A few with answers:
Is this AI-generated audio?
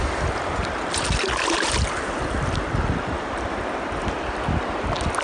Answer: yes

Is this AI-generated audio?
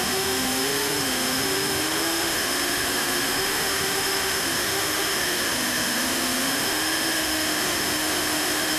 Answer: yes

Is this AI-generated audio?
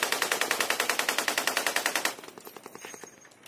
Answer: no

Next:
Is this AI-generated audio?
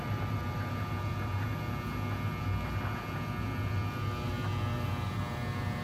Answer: no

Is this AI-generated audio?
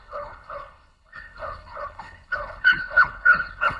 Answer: yes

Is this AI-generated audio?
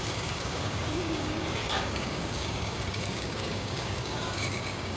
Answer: yes